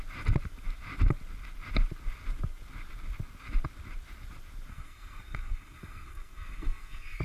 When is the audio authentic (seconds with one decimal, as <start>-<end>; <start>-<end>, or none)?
0.0-4.7